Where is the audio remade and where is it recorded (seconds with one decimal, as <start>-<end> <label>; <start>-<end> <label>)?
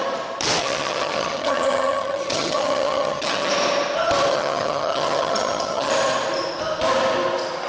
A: 0.0-0.6 recorded; 0.6-3.5 remade; 3.5-4.3 recorded; 4.3-5.9 remade; 5.9-7.7 recorded